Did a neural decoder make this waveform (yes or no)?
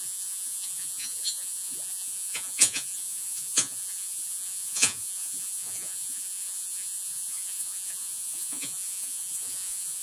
yes